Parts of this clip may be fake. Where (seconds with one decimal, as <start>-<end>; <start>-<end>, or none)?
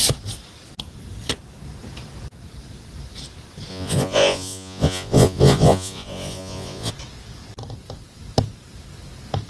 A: 3.7-6.9